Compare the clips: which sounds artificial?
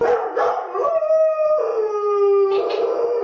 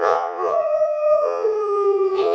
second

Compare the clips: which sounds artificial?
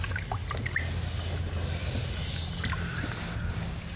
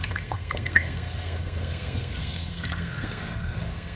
second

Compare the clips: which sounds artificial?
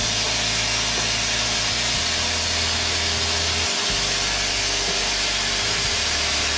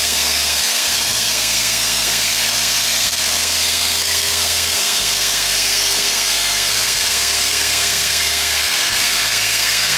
second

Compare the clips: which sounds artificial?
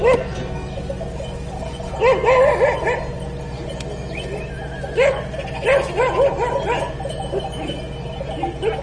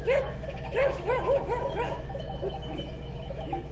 second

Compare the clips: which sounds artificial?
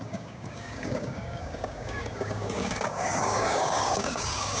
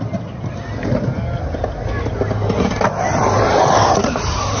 first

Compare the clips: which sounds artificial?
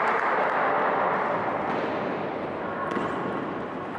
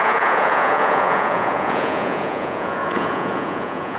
second